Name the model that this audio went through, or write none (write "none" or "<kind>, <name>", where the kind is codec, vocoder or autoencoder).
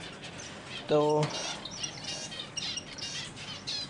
none